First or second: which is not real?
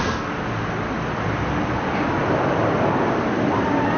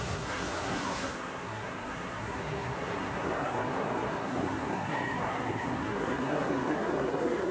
second